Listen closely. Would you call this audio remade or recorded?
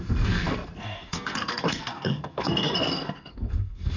remade